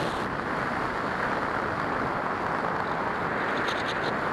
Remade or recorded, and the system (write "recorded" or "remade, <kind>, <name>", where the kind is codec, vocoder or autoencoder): recorded